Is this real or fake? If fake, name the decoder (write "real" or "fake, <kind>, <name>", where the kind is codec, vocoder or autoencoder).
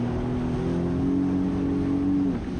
real